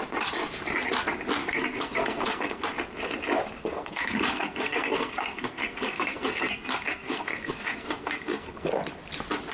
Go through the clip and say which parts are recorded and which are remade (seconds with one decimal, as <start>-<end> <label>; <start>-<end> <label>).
0.0-1.4 recorded; 1.4-2.6 remade; 2.6-3.6 recorded; 3.6-8.7 remade; 8.7-9.5 recorded